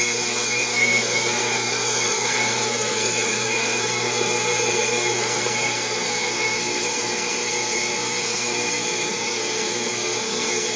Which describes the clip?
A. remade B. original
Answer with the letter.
A